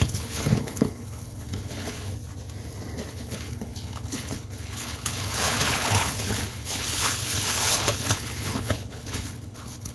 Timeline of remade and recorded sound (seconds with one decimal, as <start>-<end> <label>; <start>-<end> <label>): 0.0-2.1 remade; 2.1-3.1 recorded; 3.1-9.9 remade